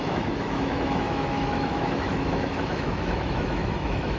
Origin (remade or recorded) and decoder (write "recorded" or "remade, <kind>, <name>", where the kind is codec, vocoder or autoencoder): remade, autoencoder, DAC-VAE